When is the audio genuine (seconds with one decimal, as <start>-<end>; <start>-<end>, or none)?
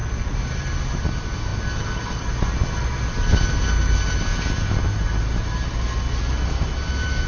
0.0-7.3